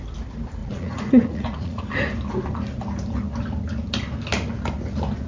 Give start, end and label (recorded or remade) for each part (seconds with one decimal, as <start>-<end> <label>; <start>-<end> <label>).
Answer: 0.0-0.6 recorded; 0.6-1.8 remade; 1.8-5.3 recorded